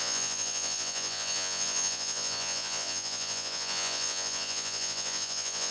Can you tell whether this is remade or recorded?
remade